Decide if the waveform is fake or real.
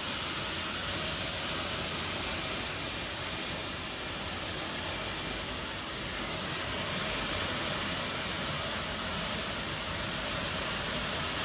real